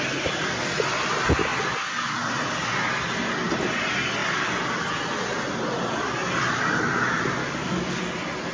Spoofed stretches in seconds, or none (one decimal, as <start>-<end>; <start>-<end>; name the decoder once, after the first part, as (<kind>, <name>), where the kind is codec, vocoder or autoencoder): 7.4-8.0 (codec, DAC)

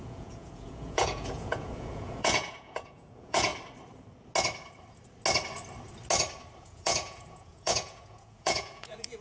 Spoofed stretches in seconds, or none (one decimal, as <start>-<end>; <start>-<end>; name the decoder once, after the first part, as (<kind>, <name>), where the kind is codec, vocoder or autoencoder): 0.0-3.5 (vocoder, Vocos); 6.6-9.2

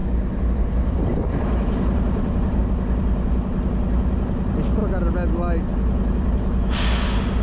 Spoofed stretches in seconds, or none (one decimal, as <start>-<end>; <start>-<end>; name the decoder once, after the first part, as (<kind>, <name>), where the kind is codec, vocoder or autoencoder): none

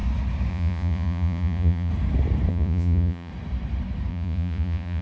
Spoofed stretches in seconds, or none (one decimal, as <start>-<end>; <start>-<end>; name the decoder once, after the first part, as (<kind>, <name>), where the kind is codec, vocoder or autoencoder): 0.5-1.9 (vocoder, Vocos); 2.5-3.3; 4.1-5.0

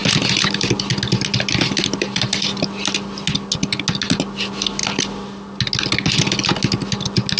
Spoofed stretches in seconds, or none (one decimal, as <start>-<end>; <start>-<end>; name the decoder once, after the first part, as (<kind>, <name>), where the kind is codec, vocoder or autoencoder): none